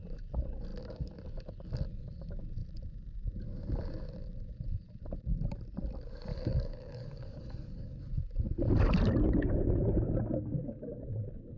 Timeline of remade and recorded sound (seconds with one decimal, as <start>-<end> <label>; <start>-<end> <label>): 0.0-6.3 recorded; 6.3-8.0 remade; 8.0-11.6 recorded